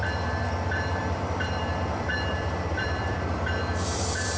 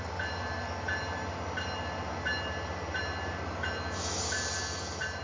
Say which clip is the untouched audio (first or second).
second